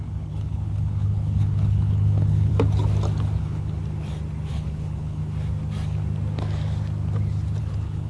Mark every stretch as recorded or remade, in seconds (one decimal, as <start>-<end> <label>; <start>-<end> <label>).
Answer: 0.0-2.5 remade; 2.5-3.4 recorded; 3.4-3.8 remade; 3.8-4.5 recorded; 4.5-5.2 remade; 5.2-7.6 recorded; 7.6-8.1 remade